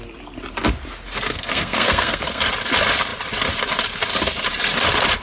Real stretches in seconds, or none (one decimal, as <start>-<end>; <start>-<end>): 0.0-1.3; 2.4-5.2